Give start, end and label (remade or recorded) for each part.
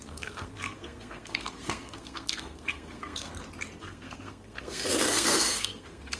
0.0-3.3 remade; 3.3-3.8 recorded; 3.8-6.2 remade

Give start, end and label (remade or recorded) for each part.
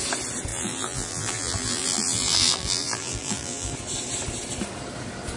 0.0-0.5 recorded; 0.5-3.7 remade; 3.7-5.4 recorded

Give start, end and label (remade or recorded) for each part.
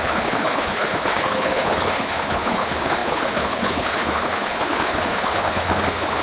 0.0-6.2 remade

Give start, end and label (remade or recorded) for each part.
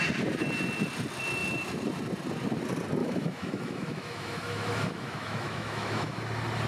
0.0-3.0 recorded; 3.0-6.2 remade; 6.2-6.7 recorded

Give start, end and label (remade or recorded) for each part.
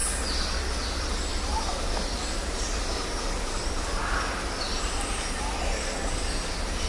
0.0-6.9 recorded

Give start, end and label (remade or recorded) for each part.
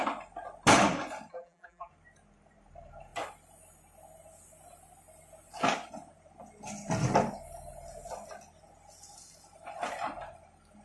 0.0-1.3 recorded; 1.3-1.9 remade; 1.9-10.8 recorded